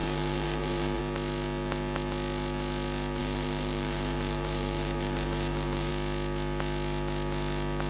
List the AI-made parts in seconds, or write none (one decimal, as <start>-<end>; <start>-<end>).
0.0-1.0; 3.2-5.9